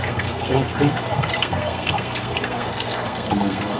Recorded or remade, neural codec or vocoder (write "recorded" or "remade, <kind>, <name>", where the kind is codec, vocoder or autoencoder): remade, codec, SNAC